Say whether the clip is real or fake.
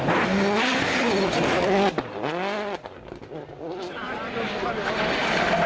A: real